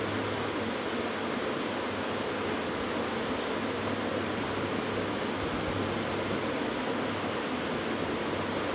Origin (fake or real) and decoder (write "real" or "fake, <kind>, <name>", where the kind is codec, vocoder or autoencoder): real